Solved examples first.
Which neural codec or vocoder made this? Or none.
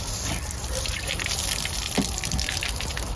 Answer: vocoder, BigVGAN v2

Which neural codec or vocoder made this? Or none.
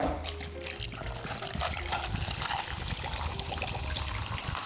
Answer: none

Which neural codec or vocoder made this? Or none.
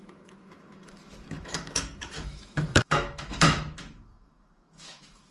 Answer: autoencoder, DAC-VAE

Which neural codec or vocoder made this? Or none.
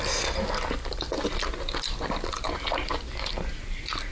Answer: none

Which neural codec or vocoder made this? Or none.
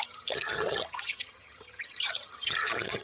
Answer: vocoder, HiFi-GAN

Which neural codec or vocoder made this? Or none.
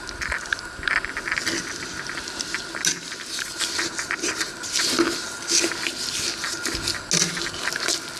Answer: none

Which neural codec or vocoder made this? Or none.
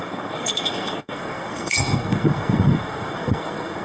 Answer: codec, SNAC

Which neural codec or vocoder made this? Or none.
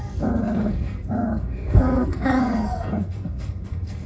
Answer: codec, SNAC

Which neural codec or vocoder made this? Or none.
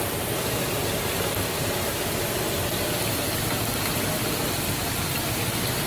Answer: none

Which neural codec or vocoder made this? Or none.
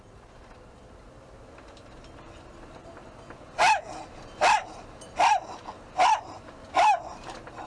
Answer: none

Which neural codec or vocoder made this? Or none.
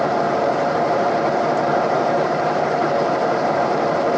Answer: vocoder, BigVGAN v2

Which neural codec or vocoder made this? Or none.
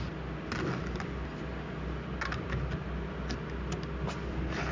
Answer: none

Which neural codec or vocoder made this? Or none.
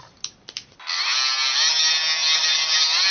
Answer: none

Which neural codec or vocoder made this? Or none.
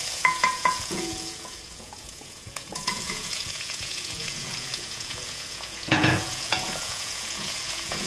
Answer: vocoder, Vocos